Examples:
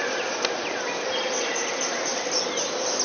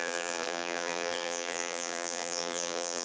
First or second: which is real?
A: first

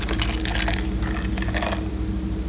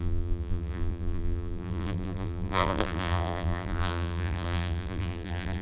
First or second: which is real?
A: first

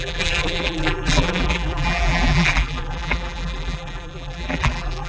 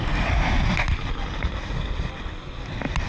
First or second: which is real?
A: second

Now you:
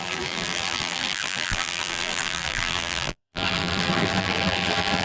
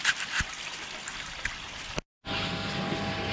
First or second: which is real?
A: second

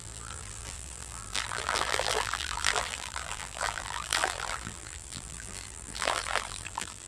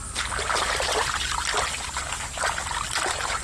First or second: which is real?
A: second